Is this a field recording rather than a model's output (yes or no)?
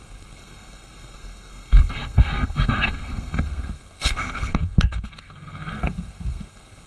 no